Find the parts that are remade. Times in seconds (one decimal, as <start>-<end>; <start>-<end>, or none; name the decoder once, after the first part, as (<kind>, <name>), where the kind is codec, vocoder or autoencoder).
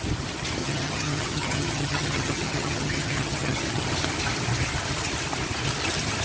0.6-3.8 (vocoder, HiFi-GAN)